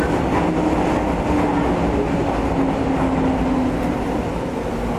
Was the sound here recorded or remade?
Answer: recorded